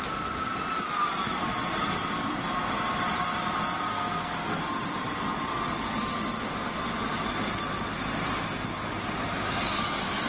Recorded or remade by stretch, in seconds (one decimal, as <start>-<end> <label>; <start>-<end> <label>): 0.0-3.9 recorded; 3.9-4.6 remade; 4.6-10.3 recorded